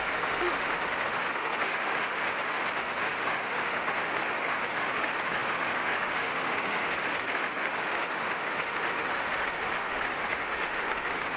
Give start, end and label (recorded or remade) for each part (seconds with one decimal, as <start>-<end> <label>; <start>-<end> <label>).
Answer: 0.0-11.4 remade